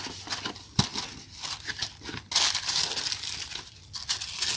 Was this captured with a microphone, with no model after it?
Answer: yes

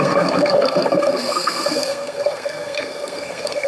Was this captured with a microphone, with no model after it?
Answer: no